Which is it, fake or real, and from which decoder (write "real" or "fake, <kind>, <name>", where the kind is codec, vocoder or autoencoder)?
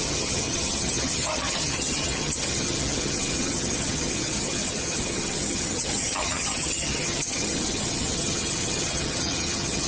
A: fake, vocoder, HiFi-GAN